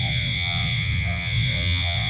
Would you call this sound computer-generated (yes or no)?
yes